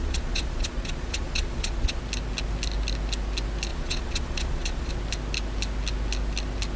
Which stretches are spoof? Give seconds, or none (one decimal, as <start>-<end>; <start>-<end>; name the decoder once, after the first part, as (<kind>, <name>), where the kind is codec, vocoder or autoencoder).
0.0-2.0 (vocoder, Vocos); 3.7-4.9